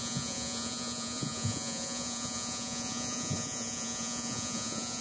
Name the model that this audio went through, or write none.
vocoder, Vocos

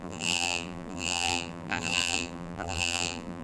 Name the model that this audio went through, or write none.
vocoder, BigVGAN v2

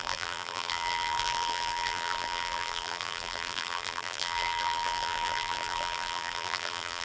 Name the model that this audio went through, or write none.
vocoder, BigVGAN v2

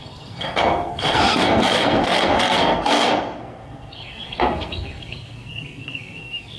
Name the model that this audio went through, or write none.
codec, SNAC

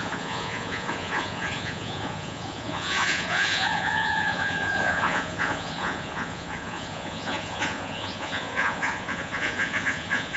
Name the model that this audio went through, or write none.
vocoder, Vocos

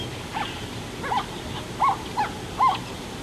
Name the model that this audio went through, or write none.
none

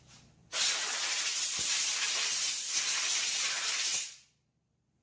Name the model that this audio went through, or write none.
none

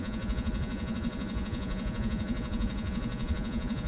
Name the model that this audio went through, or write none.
vocoder, Vocos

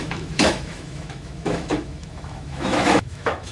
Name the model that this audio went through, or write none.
autoencoder, DAC-VAE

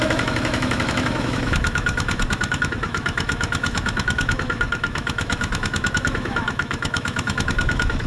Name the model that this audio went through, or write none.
autoencoder, DAC-VAE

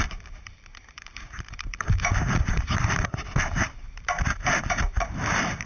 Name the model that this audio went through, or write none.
vocoder, BigVGAN v2